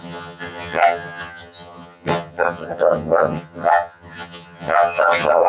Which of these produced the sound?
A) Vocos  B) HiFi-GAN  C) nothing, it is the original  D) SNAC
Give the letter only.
B